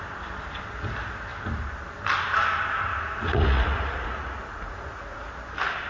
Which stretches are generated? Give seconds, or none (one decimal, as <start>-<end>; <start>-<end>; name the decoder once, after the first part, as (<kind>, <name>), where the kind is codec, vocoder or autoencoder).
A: 2.9-5.3 (vocoder, Vocos)

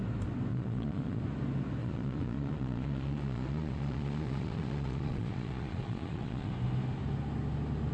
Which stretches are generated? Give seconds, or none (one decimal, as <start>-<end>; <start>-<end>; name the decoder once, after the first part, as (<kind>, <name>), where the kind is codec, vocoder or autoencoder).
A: 0.5-1.2 (vocoder, Vocos); 1.8-6.5

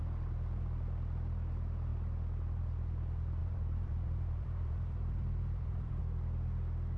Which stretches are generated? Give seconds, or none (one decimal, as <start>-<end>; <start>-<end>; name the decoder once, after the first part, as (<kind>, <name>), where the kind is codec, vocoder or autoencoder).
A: 3.4-6.0 (vocoder, BigVGAN v2)

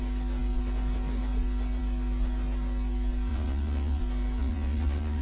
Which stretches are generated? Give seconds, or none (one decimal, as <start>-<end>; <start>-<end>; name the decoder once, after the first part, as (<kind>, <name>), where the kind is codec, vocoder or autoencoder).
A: 3.3-4.0 (vocoder, Vocos); 4.4-5.2

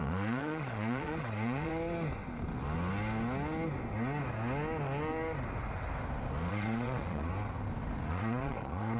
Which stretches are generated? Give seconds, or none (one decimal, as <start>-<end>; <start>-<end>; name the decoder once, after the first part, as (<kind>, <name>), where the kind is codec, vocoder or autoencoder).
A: 0.0-1.7 (vocoder, Vocos); 6.5-7.3; 8.1-9.0